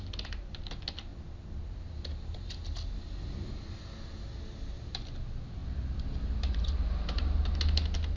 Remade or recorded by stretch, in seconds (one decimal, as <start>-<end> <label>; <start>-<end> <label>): 0.0-8.2 recorded

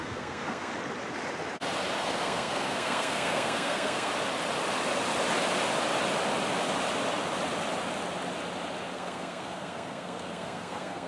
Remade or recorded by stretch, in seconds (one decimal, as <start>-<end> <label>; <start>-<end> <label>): 0.0-0.7 remade; 0.7-2.0 recorded; 2.0-4.1 remade; 4.1-8.9 recorded; 8.9-11.1 remade

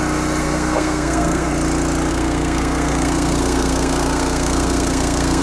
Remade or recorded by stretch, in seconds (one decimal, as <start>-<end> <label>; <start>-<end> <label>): 0.0-0.4 recorded; 0.4-1.5 remade; 1.5-2.1 recorded; 2.1-5.4 remade

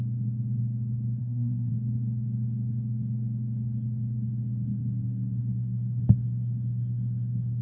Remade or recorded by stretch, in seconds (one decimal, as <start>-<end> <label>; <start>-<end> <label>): 0.0-1.2 recorded; 1.2-1.7 remade; 1.7-7.6 recorded

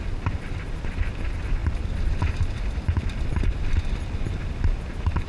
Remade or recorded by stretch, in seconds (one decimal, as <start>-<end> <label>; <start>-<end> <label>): 0.0-5.3 recorded

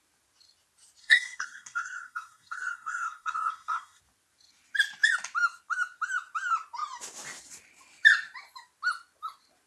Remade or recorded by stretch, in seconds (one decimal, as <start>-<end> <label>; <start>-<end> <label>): 0.0-1.0 recorded; 1.0-4.0 remade; 4.0-9.7 recorded